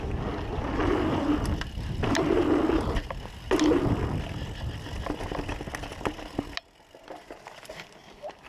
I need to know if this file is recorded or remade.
recorded